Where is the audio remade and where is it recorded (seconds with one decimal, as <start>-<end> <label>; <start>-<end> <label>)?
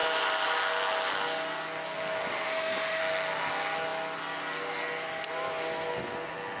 0.0-2.3 recorded; 2.3-3.0 remade; 3.0-6.6 recorded